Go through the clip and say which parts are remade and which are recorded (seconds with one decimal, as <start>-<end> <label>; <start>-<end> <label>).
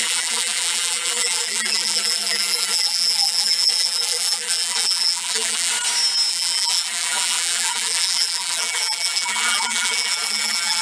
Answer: 0.0-5.7 remade; 5.7-6.3 recorded; 6.3-10.8 remade